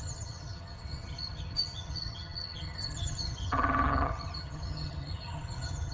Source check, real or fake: fake